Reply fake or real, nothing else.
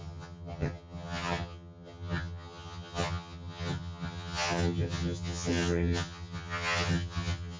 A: fake